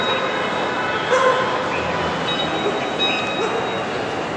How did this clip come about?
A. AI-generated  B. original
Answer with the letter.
B